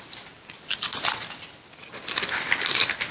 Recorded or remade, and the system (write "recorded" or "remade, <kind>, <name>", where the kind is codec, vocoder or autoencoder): recorded